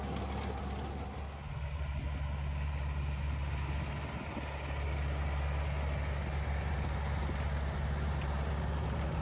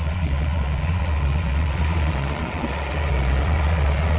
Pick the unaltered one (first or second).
first